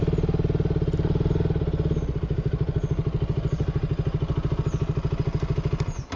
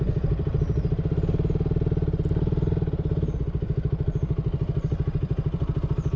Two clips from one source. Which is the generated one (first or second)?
second